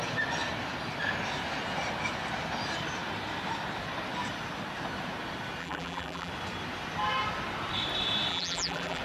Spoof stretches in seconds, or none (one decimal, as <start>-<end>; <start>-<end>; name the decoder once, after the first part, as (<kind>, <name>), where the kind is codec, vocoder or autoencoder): 5.6-6.3 (vocoder, BigVGAN v2); 8.3-9.0